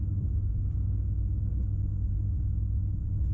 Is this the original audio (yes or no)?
yes